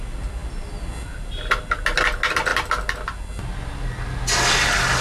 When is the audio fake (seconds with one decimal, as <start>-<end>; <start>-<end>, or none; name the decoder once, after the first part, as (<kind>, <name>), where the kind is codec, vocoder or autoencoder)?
none